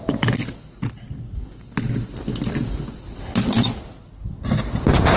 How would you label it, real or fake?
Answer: real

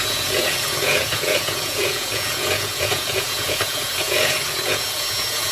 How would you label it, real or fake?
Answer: fake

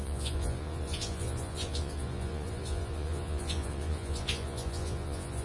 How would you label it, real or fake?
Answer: fake